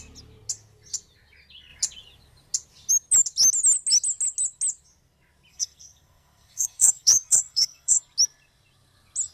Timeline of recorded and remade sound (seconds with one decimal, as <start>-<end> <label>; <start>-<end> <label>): 0.0-5.5 recorded; 5.5-8.0 remade; 8.0-9.3 recorded